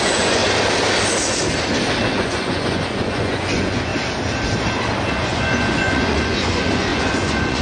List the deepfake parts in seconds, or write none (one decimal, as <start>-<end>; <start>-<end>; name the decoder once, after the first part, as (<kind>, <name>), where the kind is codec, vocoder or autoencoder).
0.0-0.4 (vocoder, Vocos); 2.1-3.9; 5.1-7.6